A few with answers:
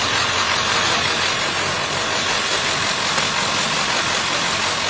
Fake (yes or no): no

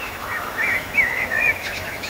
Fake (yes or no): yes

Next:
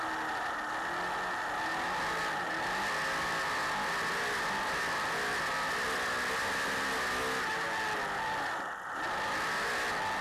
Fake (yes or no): no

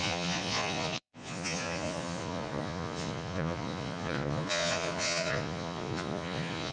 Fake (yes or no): yes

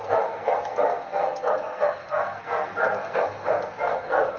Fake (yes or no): yes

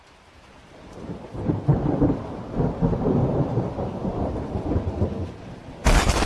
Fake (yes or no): yes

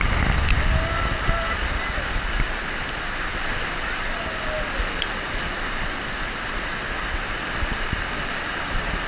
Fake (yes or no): no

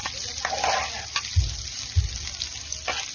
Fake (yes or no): no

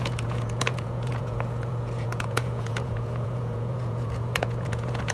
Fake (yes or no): yes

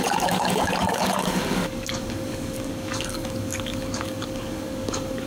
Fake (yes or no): yes